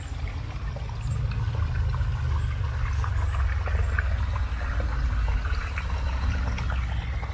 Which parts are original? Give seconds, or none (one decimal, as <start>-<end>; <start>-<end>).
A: 0.0-7.3